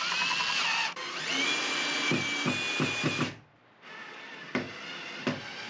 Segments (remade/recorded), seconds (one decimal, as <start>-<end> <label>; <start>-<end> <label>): 0.0-5.7 recorded